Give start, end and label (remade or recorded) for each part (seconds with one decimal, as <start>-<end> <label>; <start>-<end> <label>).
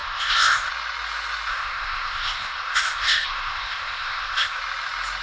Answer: 0.0-0.7 remade; 0.7-1.5 recorded; 1.5-4.6 remade; 4.6-5.2 recorded